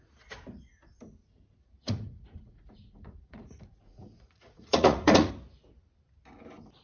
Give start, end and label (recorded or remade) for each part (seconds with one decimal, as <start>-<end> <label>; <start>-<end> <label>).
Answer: 0.0-1.2 recorded; 1.2-5.3 remade; 5.3-6.8 recorded

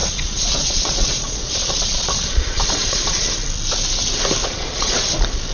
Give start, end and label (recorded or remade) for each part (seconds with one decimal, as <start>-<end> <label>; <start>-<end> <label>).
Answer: 0.0-3.3 remade; 3.3-4.4 recorded; 4.4-5.1 remade; 5.1-5.5 recorded

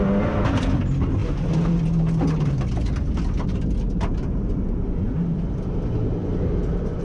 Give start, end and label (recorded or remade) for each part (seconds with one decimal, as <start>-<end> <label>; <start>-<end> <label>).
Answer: 0.0-7.0 recorded

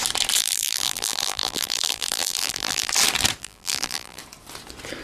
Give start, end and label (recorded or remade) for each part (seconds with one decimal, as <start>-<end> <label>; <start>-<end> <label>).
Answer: 0.0-0.4 recorded; 0.4-2.9 remade; 2.9-3.4 recorded; 3.4-4.2 remade; 4.2-5.0 recorded

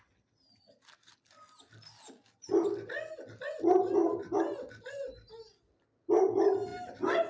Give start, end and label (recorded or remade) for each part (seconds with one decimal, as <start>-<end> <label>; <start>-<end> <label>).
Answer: 0.0-7.3 recorded

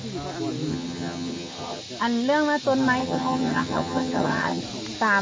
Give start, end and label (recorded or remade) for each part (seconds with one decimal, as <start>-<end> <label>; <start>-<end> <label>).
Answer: 0.0-0.7 recorded; 0.7-1.8 remade; 1.8-3.0 recorded; 3.0-4.6 remade; 4.6-5.2 recorded

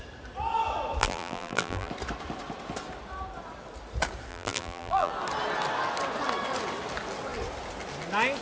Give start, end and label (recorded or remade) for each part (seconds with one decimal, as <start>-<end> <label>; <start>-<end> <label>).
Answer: 0.0-1.0 recorded; 1.0-1.9 remade; 1.9-4.3 recorded; 4.3-5.1 remade; 5.1-8.4 recorded

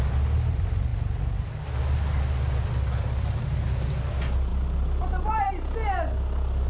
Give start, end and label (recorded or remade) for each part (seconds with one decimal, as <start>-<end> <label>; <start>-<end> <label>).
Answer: 0.0-6.7 recorded